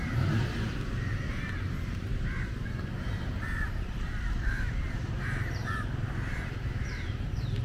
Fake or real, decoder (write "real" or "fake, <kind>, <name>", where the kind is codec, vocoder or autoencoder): fake, vocoder, BigVGAN v2